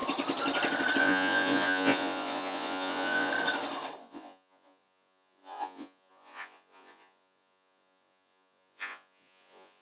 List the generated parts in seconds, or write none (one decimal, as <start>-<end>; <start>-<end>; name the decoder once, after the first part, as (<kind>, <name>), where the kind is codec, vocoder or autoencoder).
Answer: 1.0-3.3 (vocoder, Vocos); 4.0-9.8